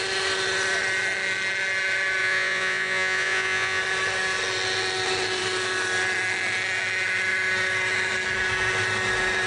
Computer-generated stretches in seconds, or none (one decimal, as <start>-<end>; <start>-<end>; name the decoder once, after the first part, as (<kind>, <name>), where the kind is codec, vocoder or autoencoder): 2.2-3.8 (vocoder, Vocos)